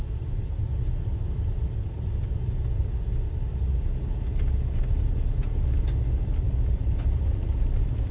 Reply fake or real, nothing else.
real